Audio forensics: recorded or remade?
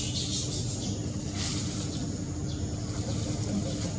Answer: recorded